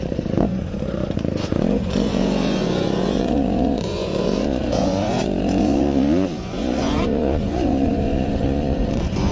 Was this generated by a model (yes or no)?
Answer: yes